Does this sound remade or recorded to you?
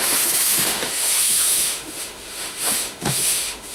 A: remade